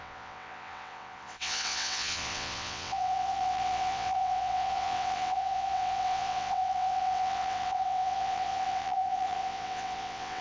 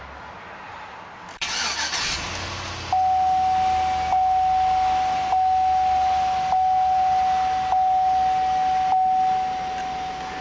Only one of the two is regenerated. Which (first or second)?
first